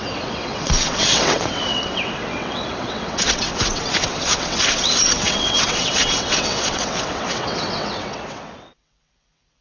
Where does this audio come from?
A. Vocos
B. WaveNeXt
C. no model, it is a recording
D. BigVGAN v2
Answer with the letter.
B